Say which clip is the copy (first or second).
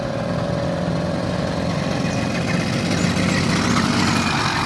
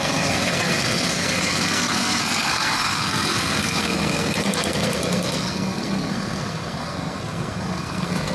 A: second